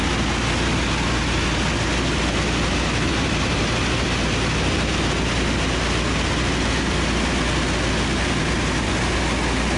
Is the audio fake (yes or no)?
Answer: no